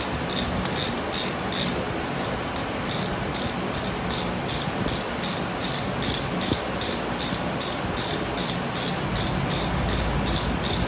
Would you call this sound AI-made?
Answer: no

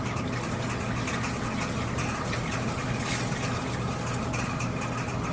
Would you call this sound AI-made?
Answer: no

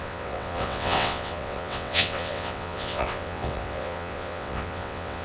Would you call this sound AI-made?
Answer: yes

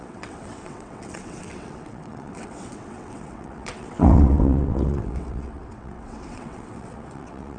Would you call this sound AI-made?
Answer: yes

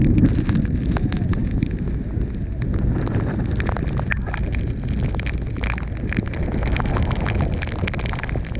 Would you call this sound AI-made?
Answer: no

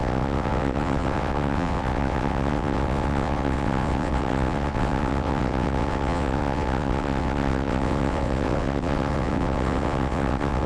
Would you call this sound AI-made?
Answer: yes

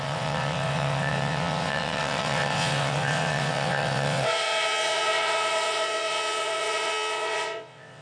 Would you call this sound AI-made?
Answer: yes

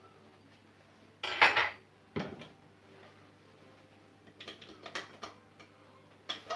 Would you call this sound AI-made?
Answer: no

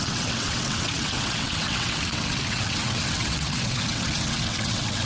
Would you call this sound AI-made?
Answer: yes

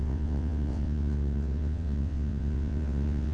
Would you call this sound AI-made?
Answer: yes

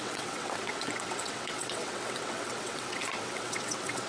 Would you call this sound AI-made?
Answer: yes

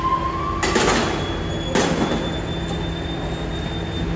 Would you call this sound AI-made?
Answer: no